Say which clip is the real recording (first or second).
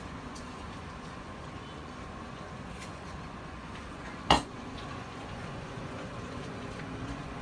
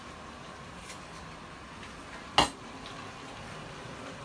second